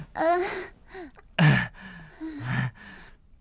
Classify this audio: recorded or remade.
recorded